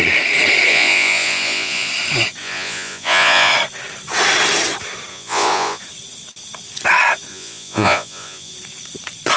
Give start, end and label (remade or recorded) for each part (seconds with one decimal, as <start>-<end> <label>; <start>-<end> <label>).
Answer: 0.0-0.7 recorded; 0.7-1.9 remade; 1.9-2.4 recorded; 2.4-3.5 remade; 3.5-5.1 recorded; 5.1-5.8 remade; 5.8-7.3 recorded; 7.3-8.5 remade; 8.5-9.4 recorded